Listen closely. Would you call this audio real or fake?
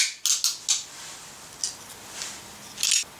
real